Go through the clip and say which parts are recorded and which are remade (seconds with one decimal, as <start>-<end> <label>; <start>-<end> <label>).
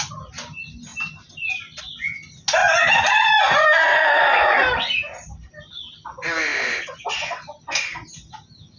0.0-0.9 recorded; 0.9-1.8 remade; 1.8-8.8 recorded